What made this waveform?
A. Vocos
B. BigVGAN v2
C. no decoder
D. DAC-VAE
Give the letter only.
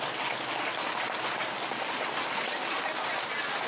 C